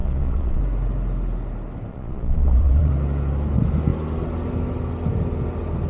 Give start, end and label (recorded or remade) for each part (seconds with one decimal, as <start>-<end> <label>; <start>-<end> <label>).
0.0-0.6 remade; 0.6-1.9 recorded; 1.9-2.9 remade; 2.9-5.9 recorded